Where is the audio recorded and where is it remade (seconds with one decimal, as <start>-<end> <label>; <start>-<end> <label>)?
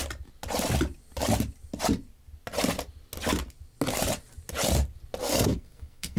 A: 0.0-5.2 recorded; 5.2-6.2 remade